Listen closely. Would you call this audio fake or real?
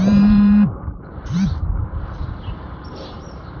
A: fake